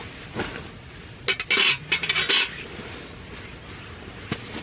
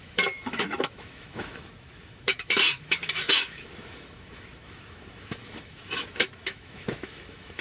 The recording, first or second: first